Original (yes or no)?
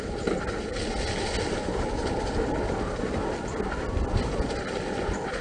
yes